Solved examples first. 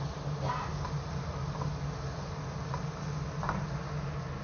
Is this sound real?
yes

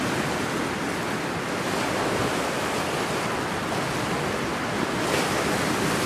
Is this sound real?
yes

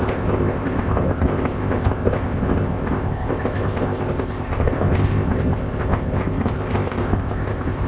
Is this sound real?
no